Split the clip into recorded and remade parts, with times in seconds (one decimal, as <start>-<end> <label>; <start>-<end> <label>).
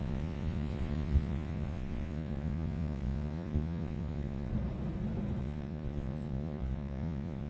0.0-4.5 remade; 4.5-5.4 recorded; 5.4-7.5 remade